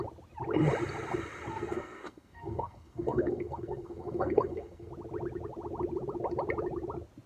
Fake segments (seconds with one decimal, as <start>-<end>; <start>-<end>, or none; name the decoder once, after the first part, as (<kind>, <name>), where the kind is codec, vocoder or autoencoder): 1.5-4.9 (codec, SNAC)